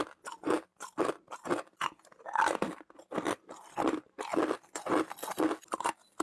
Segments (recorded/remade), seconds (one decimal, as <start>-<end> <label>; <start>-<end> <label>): 0.0-0.7 recorded; 0.7-4.4 remade; 4.4-6.2 recorded